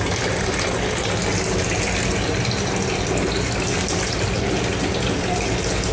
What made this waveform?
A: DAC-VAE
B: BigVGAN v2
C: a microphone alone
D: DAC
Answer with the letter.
C